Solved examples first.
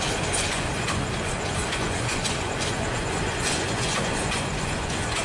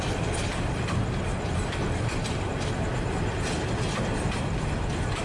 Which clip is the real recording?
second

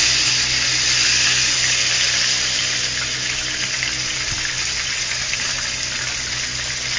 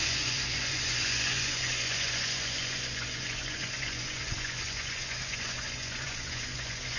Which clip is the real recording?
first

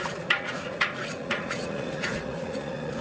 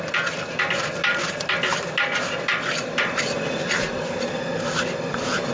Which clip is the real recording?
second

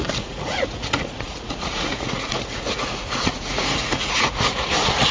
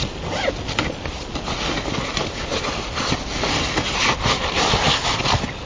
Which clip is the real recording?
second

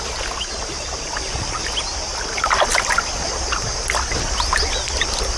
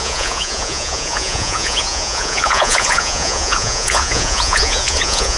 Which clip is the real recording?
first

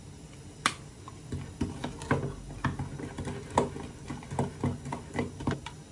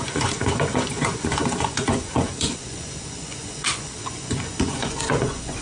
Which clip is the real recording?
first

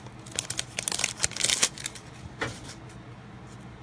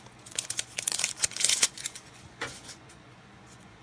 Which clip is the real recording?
first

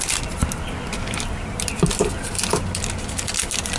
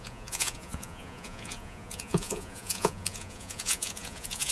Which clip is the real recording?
first